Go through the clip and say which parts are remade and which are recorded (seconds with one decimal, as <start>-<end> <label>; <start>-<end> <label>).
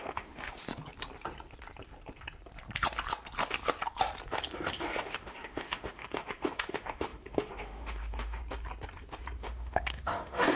0.0-0.7 remade; 0.7-4.7 recorded; 4.7-8.4 remade; 8.4-9.4 recorded; 9.4-10.6 remade